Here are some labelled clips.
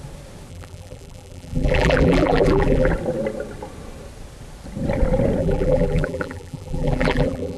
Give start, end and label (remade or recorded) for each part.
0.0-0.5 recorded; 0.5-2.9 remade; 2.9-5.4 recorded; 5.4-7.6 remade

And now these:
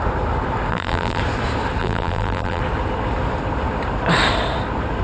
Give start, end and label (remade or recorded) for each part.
0.0-0.7 recorded; 0.7-1.2 remade; 1.2-1.8 recorded; 1.8-2.6 remade; 2.6-5.0 recorded

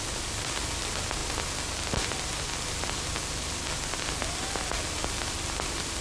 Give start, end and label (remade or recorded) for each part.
0.0-6.0 recorded